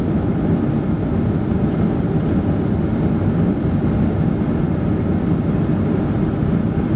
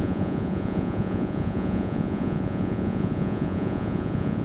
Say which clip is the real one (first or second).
first